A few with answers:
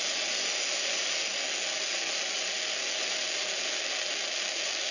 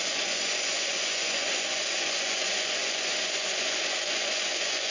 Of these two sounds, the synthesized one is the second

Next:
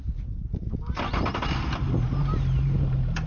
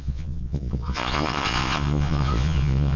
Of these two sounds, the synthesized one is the second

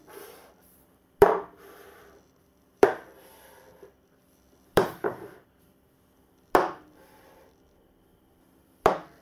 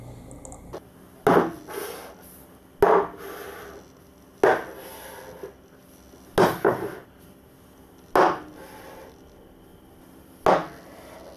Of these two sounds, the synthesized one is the first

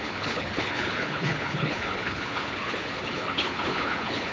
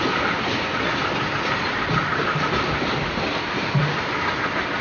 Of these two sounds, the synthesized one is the first